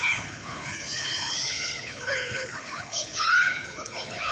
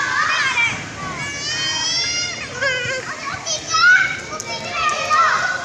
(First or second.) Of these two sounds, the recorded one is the second